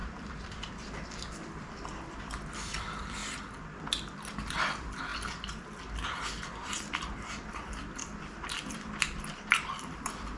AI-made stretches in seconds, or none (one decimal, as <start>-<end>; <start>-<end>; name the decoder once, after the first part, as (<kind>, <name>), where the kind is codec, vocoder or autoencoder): 0.0-3.2 (vocoder, BigVGAN v2); 3.7-5.1; 6.4-10.4